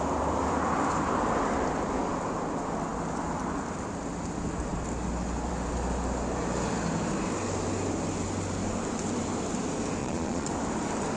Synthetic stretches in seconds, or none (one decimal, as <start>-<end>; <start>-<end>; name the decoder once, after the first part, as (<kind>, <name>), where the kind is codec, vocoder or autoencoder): 10.0-10.5 (vocoder, Vocos)